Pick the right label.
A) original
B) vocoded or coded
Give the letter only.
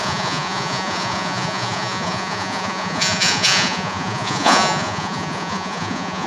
B